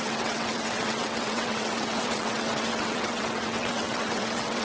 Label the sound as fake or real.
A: fake